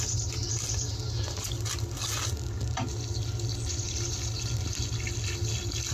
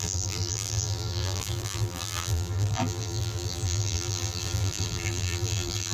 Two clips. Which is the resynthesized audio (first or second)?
second